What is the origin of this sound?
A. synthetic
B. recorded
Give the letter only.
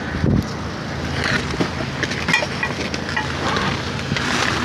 B